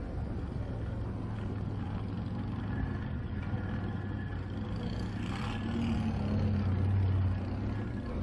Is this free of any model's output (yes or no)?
yes